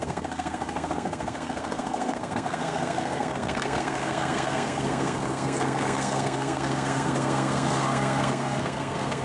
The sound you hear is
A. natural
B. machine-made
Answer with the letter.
B